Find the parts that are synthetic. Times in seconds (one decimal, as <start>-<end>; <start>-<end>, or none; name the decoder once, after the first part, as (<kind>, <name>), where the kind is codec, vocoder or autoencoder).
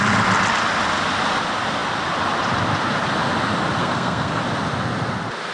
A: 3.8-4.4 (codec, SNAC)